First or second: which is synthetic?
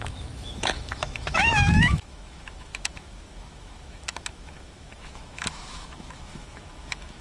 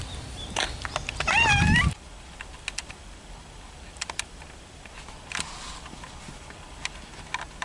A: first